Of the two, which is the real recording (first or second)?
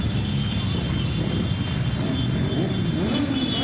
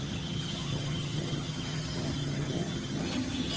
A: first